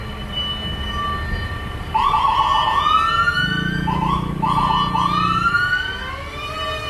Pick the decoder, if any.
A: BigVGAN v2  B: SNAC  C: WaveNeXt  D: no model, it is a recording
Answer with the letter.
D